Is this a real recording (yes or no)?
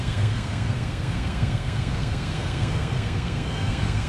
no